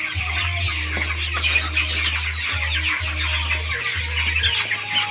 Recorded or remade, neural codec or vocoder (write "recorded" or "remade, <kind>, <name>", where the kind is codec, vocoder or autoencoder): recorded